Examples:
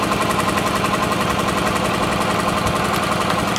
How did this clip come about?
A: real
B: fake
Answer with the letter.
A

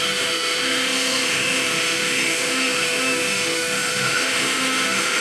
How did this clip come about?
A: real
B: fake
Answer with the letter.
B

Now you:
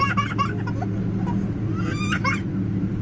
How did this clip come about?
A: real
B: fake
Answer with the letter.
A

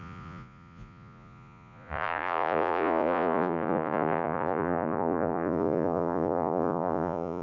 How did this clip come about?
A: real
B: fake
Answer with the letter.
B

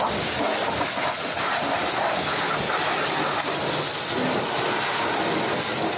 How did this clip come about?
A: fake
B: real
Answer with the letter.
B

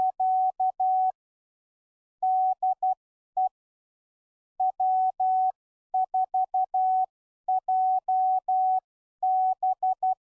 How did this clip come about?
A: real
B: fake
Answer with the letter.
A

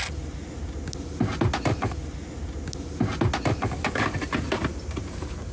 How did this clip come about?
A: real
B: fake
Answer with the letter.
A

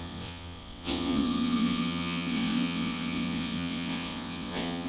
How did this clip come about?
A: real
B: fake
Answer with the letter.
B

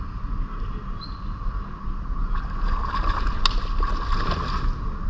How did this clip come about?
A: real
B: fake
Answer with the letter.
A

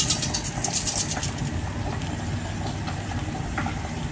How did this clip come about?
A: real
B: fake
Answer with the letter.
A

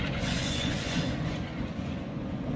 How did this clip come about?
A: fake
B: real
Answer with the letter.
A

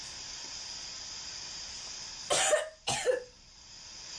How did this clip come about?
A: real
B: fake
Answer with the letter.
A